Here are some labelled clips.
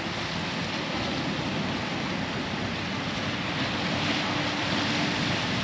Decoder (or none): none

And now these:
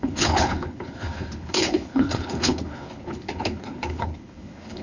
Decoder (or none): codec, HILCodec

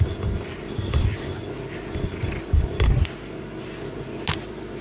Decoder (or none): none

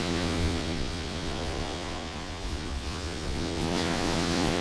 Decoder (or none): vocoder, Vocos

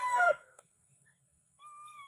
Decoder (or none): codec, SNAC